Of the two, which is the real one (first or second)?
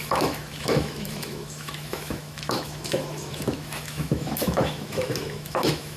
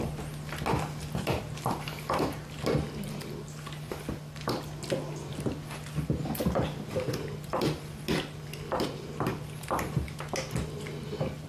second